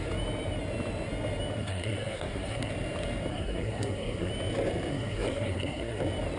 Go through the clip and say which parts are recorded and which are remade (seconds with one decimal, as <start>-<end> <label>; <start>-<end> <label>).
0.0-1.6 recorded; 1.6-2.7 remade; 2.7-3.3 recorded; 3.3-4.3 remade; 4.3-4.9 recorded; 4.9-6.0 remade; 6.0-6.4 recorded